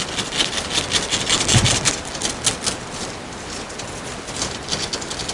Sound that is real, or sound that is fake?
real